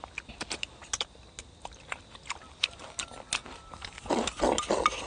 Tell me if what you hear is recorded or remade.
recorded